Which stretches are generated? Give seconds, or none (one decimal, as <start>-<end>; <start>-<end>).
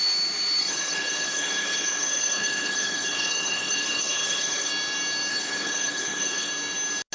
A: 0.6-4.7; 5.3-6.5